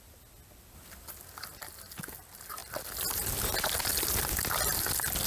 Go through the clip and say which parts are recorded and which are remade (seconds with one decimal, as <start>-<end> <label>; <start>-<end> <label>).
0.0-2.6 recorded; 2.6-3.3 remade; 3.3-5.3 recorded